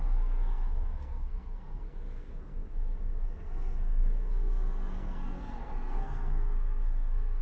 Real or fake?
fake